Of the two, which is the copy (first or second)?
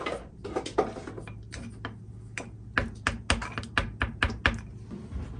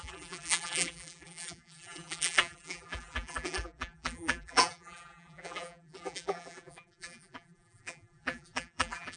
second